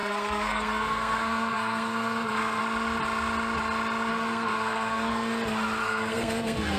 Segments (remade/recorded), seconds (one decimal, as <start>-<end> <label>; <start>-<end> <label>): 0.0-2.6 remade; 2.6-4.1 recorded; 4.1-5.1 remade; 5.1-5.8 recorded; 5.8-6.8 remade